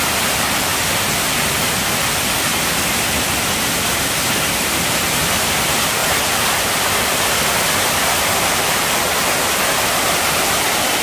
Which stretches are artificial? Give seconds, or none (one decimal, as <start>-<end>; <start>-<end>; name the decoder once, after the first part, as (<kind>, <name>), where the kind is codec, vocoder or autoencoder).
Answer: 6.0-11.0 (vocoder, BigVGAN v2)